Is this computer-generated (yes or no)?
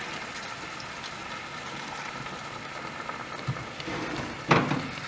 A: no